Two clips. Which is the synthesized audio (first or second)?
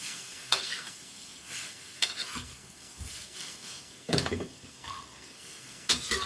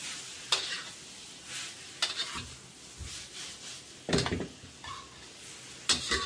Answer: first